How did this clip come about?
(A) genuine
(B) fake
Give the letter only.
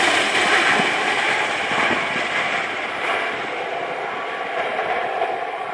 A